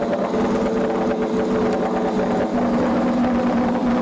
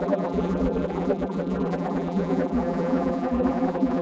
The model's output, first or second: second